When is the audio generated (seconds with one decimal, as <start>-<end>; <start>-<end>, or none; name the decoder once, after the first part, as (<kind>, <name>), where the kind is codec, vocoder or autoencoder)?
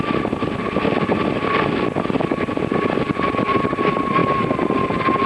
none